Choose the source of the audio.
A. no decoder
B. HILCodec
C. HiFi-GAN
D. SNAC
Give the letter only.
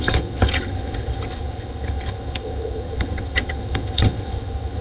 C